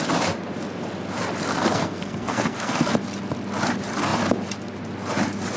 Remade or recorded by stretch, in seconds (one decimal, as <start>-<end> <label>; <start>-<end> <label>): 0.0-1.5 recorded; 1.5-2.9 remade; 2.9-5.6 recorded